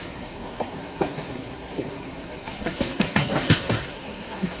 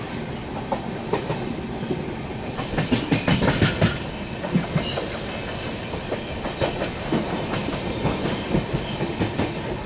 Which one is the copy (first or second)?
first